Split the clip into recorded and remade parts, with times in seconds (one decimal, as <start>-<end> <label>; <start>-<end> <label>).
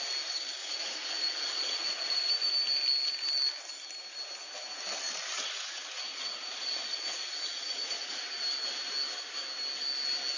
0.0-0.6 recorded; 0.6-2.5 remade; 2.5-5.3 recorded; 5.3-8.2 remade; 8.2-10.4 recorded